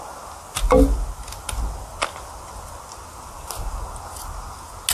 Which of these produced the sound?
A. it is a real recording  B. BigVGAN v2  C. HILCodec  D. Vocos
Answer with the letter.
A